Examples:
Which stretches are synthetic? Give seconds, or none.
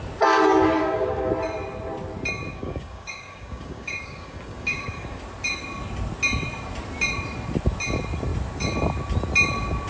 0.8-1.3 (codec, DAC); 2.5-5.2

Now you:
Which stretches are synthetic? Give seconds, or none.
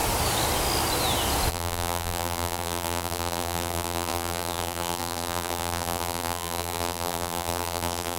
1.5-8.2 (vocoder, BigVGAN v2)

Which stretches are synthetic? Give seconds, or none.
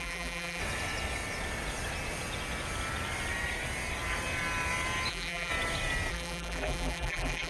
0.0-0.6 (vocoder, BigVGAN v2); 5.1-5.5; 6.1-7.5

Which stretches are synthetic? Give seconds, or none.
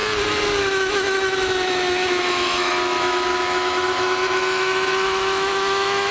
0.6-6.1 (autoencoder, DAC-VAE)